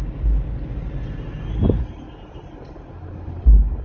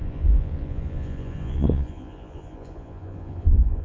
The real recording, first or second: first